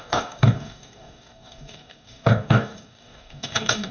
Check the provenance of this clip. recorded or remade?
remade